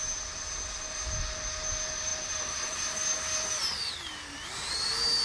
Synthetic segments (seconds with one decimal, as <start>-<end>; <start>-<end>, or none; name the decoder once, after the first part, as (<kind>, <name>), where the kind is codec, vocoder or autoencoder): none